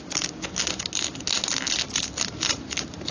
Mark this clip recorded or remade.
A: recorded